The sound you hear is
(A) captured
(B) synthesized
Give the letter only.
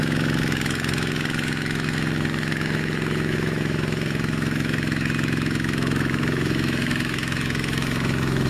B